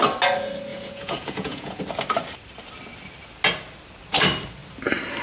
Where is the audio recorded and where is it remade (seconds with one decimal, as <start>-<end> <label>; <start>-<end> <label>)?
0.0-0.7 recorded; 0.7-1.8 remade; 1.8-5.2 recorded